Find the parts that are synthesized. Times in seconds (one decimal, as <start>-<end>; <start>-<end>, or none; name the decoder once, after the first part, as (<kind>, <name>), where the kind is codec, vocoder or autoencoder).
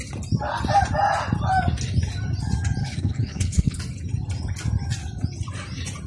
2.8-3.8 (codec, HILCodec)